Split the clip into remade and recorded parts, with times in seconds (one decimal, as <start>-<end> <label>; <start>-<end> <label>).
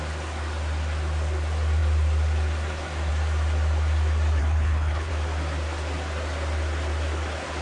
0.0-4.4 recorded; 4.4-5.1 remade; 5.1-7.6 recorded